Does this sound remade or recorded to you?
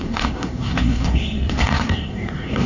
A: remade